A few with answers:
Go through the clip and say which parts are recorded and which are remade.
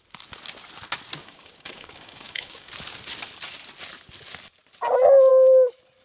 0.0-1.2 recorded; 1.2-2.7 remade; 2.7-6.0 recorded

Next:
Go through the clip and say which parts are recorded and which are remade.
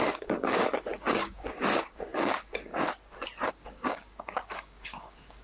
0.0-2.7 remade; 2.7-3.5 recorded; 3.5-5.4 remade